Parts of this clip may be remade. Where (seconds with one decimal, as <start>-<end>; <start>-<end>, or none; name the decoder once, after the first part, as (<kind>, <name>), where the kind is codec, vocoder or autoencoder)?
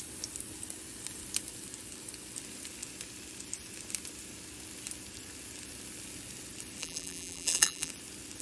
6.8-7.9 (vocoder, BigVGAN v2)